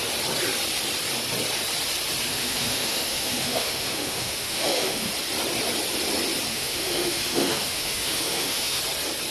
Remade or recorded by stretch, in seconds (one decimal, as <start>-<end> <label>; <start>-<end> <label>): 0.0-2.3 recorded; 2.3-5.1 remade; 5.1-6.5 recorded; 6.5-8.8 remade; 8.8-9.3 recorded